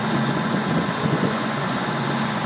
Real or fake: fake